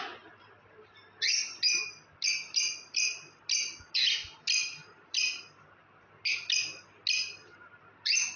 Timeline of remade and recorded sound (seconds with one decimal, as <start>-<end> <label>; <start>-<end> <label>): 0.0-4.6 recorded; 4.6-5.4 remade; 5.4-8.4 recorded